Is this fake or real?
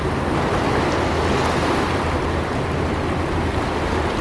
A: real